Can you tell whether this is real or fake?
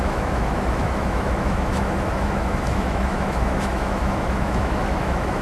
fake